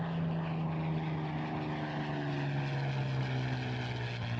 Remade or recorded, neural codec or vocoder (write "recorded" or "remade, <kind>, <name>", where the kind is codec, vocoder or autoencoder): recorded